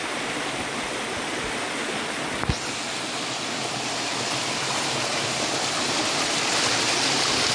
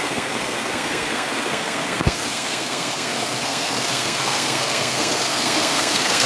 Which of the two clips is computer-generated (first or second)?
second